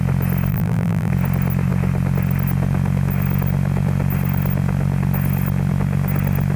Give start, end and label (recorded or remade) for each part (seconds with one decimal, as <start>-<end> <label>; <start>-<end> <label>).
0.0-0.5 recorded; 0.5-1.1 remade; 1.1-6.6 recorded